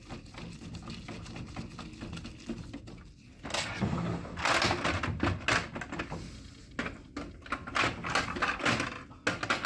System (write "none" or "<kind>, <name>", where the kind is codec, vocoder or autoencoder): none